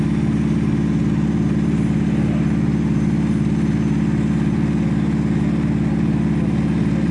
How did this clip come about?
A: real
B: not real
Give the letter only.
A